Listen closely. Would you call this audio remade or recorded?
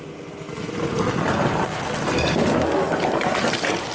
recorded